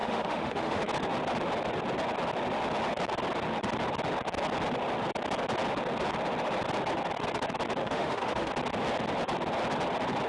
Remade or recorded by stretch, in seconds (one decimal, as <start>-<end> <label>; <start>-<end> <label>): 0.0-0.8 remade; 0.8-7.8 recorded; 7.8-8.5 remade; 8.5-10.3 recorded